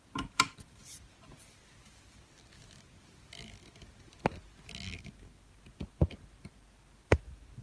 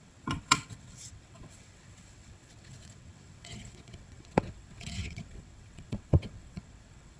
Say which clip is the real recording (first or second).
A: first